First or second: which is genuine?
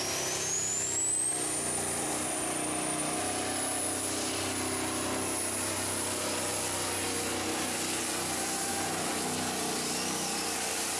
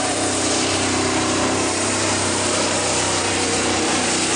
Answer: first